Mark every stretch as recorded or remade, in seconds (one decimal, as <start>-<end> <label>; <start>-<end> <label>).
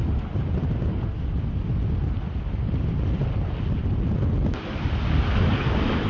0.0-1.0 remade; 1.0-6.1 recorded